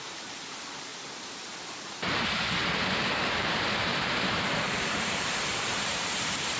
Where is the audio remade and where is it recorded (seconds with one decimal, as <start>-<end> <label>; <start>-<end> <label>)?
0.0-0.9 remade; 0.9-2.9 recorded; 2.9-6.6 remade